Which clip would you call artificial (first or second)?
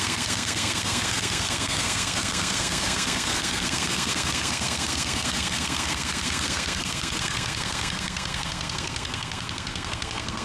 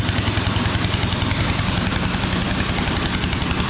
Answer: first